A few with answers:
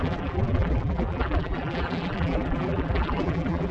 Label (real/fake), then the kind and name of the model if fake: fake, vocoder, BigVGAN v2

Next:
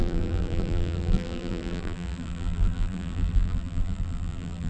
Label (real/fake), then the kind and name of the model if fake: fake, vocoder, BigVGAN v2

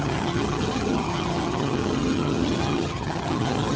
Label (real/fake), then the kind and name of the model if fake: fake, vocoder, HiFi-GAN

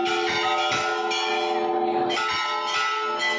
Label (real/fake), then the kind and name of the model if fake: real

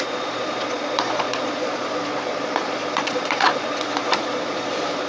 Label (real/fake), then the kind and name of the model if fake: fake, vocoder, Vocos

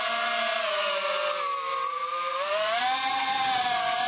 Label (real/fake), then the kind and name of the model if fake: real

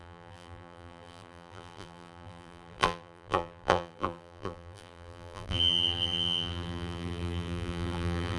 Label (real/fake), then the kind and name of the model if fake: fake, vocoder, BigVGAN v2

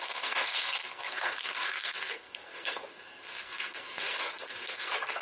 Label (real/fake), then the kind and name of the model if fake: fake, codec, SNAC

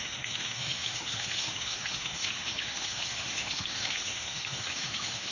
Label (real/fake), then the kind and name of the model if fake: fake, autoencoder, DAC-VAE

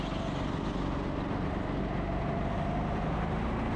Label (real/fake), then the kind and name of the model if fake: real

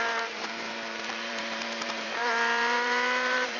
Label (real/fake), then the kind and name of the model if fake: fake, vocoder, BigVGAN v2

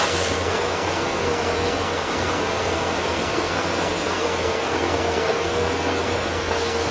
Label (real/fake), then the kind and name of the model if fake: fake, codec, SNAC